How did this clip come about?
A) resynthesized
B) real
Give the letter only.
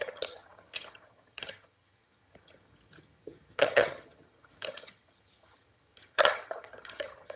A